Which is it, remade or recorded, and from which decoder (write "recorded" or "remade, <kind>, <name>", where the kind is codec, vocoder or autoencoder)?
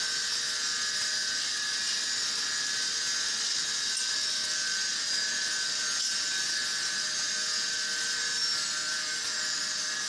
recorded